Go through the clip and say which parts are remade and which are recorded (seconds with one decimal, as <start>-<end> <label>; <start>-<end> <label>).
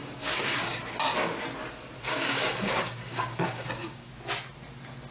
0.0-0.8 remade; 0.8-2.1 recorded; 2.1-4.1 remade; 4.1-5.1 recorded